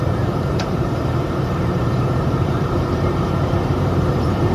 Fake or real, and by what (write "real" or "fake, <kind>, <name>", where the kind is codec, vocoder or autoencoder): fake, vocoder, BigVGAN v2